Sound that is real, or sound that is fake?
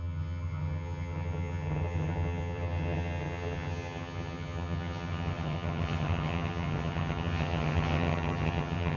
fake